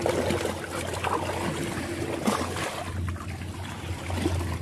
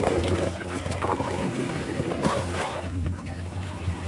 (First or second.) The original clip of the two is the first